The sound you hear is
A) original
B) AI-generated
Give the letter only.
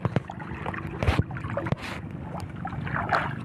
A